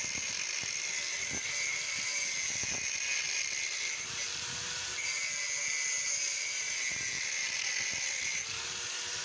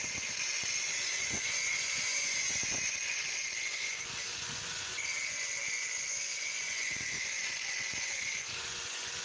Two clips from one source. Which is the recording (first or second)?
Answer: first